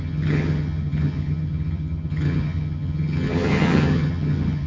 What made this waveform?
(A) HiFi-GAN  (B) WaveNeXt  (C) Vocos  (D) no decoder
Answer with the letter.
A